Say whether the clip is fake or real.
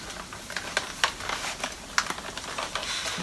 real